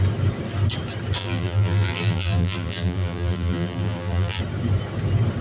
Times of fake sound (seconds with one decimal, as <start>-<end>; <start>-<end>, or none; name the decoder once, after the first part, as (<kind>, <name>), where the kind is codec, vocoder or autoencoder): 1.2-4.4 (vocoder, BigVGAN v2)